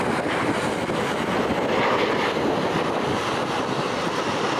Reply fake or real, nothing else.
real